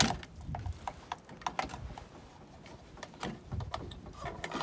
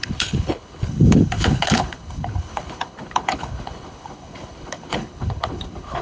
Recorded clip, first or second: first